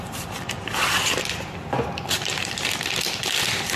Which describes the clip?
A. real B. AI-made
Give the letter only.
A